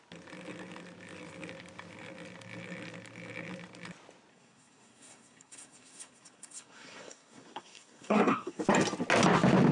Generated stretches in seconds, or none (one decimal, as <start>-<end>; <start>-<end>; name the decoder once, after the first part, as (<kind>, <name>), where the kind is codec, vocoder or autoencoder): 4.3-8.6 (codec, SNAC)